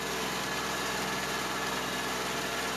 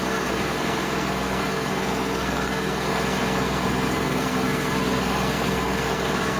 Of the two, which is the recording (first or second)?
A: first